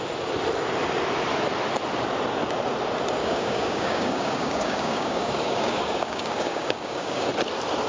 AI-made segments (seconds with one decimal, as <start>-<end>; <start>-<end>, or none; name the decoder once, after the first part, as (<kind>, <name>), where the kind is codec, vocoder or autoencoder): 3.2-7.3 (codec, DAC)